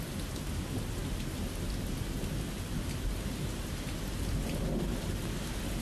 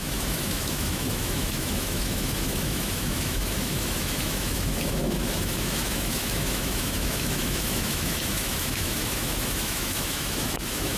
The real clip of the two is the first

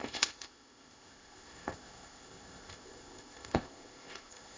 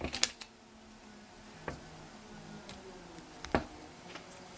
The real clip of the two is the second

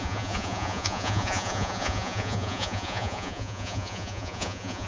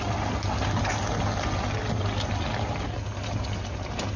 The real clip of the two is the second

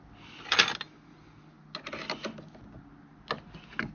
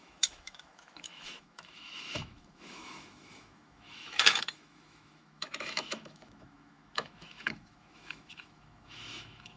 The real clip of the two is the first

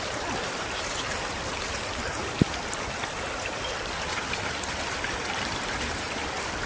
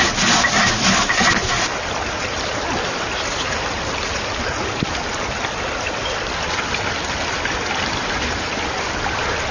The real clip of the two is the second